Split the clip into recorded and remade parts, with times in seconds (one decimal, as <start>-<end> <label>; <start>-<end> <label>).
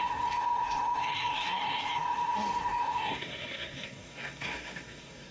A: 0.0-5.3 remade